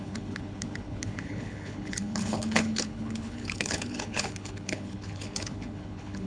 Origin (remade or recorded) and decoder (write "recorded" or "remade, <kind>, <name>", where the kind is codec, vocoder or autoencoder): remade, codec, HILCodec